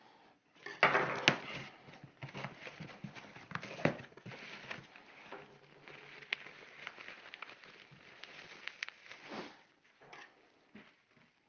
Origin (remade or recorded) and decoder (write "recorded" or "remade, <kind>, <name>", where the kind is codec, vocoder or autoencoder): recorded